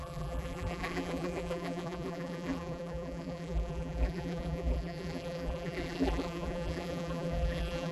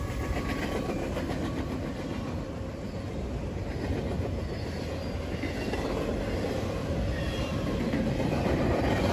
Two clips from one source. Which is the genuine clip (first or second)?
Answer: second